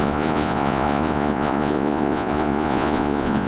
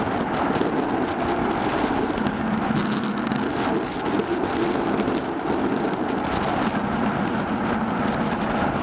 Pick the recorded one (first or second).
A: second